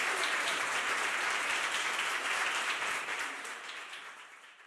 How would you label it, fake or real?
fake